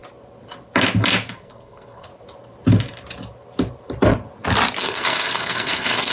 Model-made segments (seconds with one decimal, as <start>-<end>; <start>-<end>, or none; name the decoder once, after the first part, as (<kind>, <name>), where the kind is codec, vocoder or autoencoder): 1.3-2.1 (codec, SNAC); 4.8-6.1